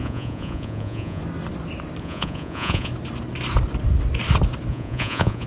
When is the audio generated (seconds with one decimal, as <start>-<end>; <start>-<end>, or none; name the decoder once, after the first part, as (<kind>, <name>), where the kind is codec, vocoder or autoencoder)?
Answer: 0.0-1.2 (vocoder, Vocos); 2.0-2.9; 4.7-5.5